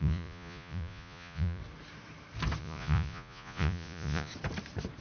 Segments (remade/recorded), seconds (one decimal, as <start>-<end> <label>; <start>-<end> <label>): 0.0-1.6 remade; 1.6-2.6 recorded; 2.6-4.3 remade; 4.3-5.0 recorded